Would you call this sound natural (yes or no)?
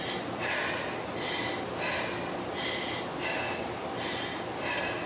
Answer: yes